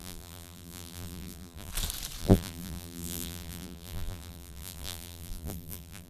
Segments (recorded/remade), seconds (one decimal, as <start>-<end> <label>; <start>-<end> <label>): 0.0-1.7 remade; 1.7-2.2 recorded; 2.2-6.1 remade